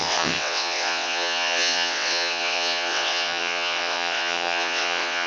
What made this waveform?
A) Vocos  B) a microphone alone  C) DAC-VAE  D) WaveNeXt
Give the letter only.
D